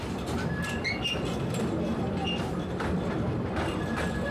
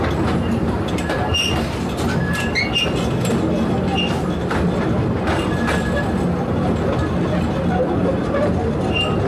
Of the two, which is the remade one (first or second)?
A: first